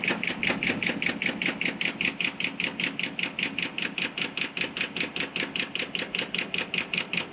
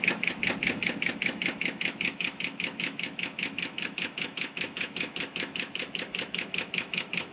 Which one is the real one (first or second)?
first